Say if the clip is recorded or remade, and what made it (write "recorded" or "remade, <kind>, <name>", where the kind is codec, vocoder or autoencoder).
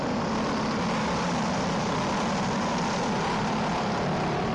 recorded